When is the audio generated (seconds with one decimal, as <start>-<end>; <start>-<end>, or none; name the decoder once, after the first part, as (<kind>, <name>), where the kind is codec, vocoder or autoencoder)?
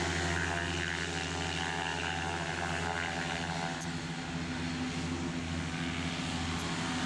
none